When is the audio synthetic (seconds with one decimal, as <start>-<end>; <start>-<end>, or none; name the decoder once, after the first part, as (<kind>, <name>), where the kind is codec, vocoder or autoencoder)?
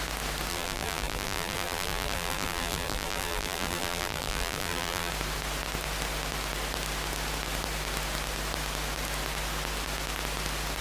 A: 0.5-5.1 (vocoder, BigVGAN v2)